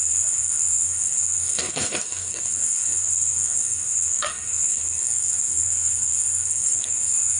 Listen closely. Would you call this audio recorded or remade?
remade